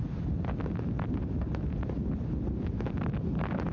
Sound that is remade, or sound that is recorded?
recorded